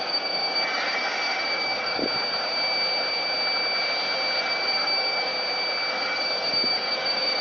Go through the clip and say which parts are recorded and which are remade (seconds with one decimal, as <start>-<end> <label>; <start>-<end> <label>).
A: 0.0-2.0 remade; 2.0-4.4 recorded; 4.4-5.3 remade; 5.3-5.9 recorded; 5.9-7.4 remade